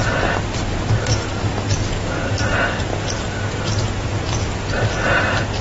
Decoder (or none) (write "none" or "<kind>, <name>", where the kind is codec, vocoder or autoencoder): none